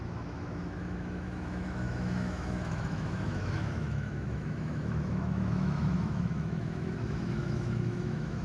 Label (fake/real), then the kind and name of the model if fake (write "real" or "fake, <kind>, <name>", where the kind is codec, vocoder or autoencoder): fake, autoencoder, DAC-VAE